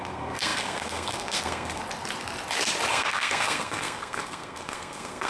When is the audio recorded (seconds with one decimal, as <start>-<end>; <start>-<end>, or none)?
1.8-2.9